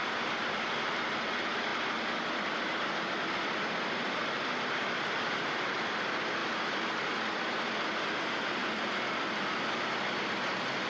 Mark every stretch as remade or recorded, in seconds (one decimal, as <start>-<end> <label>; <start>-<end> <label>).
0.0-10.9 remade